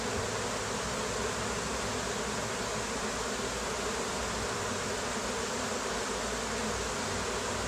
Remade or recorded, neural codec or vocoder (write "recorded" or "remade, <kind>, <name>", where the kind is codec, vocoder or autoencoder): recorded